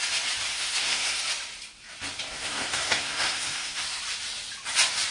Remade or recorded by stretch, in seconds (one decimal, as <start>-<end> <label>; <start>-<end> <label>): 0.0-0.5 recorded; 0.5-1.2 remade; 1.2-2.3 recorded; 2.3-4.0 remade; 4.0-5.1 recorded